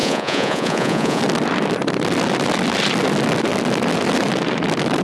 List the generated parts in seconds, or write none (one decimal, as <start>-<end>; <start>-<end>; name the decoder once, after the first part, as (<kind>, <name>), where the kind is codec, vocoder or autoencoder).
0.0-1.2 (vocoder, Vocos)